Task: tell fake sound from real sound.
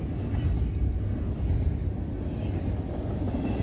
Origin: real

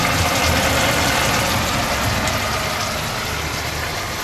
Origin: real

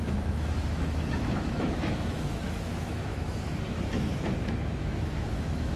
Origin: fake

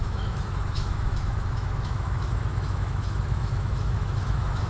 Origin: fake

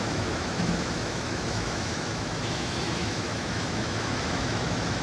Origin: fake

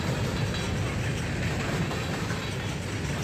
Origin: real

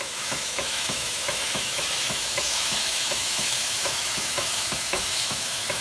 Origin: fake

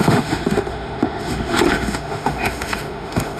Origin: fake